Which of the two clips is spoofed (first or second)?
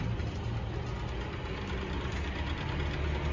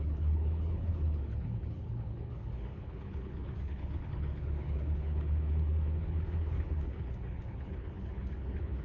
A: second